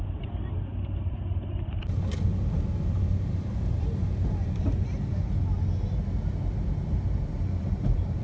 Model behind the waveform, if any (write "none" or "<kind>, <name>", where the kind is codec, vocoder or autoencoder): none